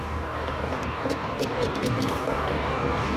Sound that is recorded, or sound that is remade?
remade